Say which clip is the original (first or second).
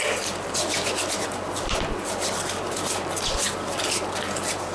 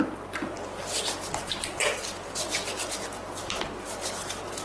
second